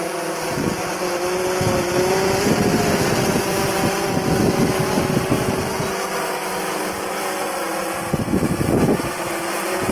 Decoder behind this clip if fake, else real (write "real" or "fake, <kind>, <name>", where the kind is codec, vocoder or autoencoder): real